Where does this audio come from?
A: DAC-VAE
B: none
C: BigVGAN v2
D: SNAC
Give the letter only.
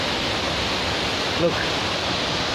B